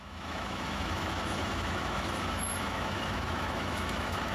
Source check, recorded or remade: remade